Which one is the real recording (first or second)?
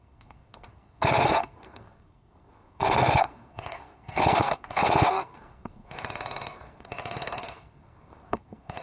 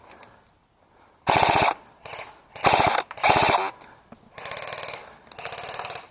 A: second